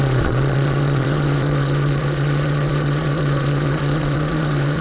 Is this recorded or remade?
remade